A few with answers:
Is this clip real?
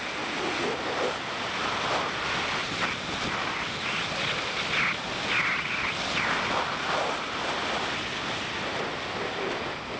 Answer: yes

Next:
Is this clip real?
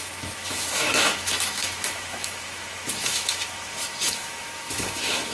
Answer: no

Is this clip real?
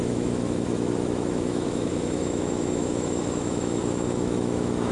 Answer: no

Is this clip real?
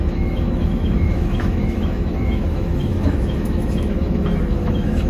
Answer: no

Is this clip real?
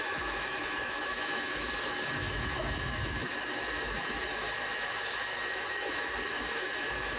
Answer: no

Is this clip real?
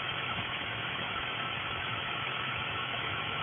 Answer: no